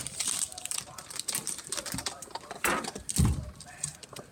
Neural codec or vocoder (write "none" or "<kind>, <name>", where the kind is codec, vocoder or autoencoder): none